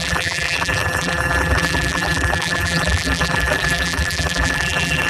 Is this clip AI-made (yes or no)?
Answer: yes